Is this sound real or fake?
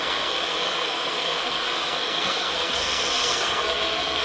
fake